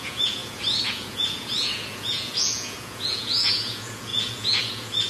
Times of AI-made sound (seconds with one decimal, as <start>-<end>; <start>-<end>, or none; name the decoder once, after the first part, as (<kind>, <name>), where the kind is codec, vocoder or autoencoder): 0.0-5.1 (vocoder, Vocos)